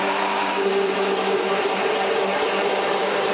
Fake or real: fake